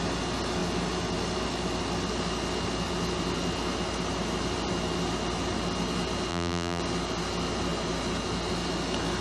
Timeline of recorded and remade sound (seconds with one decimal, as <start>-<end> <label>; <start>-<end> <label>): 0.0-6.3 recorded; 6.3-6.8 remade; 6.8-9.2 recorded

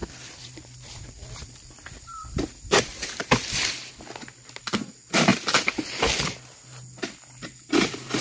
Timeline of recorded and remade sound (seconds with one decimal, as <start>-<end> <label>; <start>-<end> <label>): 0.0-3.9 remade; 3.9-5.3 recorded; 5.3-6.0 remade; 6.0-8.2 recorded

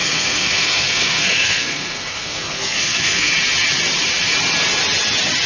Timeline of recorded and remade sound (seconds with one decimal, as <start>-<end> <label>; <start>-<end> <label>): 0.0-3.3 remade; 3.3-5.5 recorded

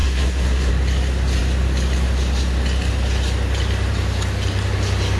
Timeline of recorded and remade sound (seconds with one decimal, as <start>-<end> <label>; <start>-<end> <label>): 0.0-0.7 remade; 0.7-5.2 recorded

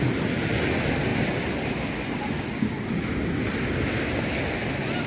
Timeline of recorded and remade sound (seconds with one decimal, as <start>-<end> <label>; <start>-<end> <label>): 0.0-5.1 recorded